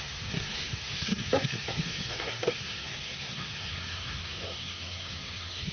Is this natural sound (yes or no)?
no